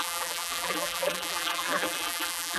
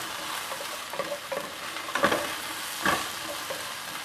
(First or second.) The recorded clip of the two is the second